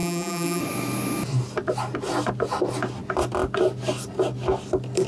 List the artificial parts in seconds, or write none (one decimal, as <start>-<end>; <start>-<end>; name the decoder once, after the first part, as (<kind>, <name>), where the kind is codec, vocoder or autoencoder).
0.0-0.6 (vocoder, BigVGAN v2)